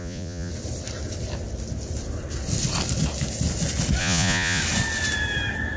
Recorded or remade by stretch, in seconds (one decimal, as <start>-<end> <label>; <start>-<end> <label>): 0.0-0.5 remade; 0.5-4.0 recorded; 4.0-4.6 remade; 4.6-5.8 recorded